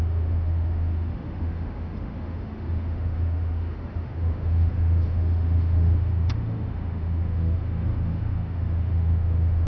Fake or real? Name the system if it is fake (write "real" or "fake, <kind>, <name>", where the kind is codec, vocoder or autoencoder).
fake, autoencoder, DAC-VAE